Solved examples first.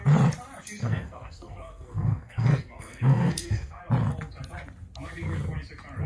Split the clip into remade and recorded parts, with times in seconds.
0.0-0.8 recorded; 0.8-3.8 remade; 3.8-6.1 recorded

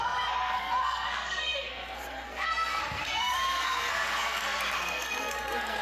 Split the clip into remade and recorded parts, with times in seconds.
0.0-5.8 remade

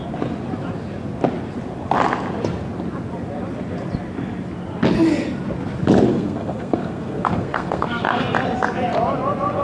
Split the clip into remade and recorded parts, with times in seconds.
0.0-6.1 recorded; 6.1-8.2 remade; 8.2-9.6 recorded